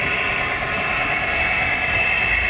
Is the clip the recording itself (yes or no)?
no